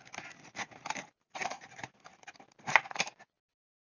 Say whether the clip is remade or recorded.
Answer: recorded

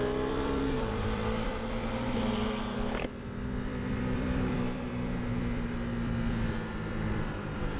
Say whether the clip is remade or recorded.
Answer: remade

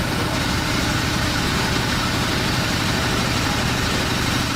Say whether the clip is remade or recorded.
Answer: remade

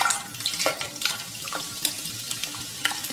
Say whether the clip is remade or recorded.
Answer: recorded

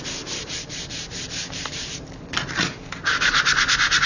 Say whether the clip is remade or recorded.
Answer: recorded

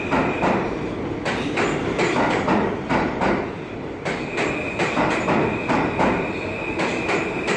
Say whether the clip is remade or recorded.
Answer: remade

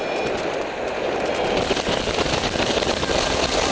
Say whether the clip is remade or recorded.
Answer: remade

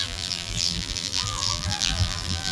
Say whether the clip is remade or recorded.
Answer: remade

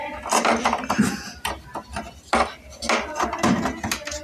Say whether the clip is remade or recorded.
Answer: recorded